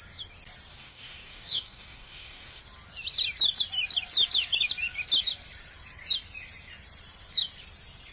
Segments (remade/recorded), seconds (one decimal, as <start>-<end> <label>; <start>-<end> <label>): 0.0-0.7 recorded; 0.7-2.6 remade; 2.6-8.1 recorded